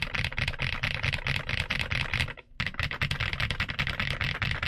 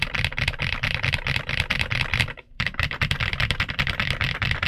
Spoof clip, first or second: second